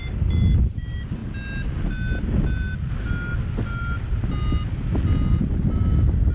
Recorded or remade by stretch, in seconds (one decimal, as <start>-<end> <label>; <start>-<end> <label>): 0.0-6.3 recorded